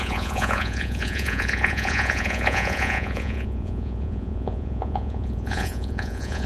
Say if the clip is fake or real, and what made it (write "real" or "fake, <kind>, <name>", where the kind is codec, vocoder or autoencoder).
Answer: fake, vocoder, Vocos